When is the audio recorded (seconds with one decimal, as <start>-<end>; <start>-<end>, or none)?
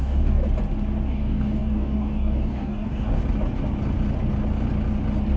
0.4-1.1; 3.2-5.4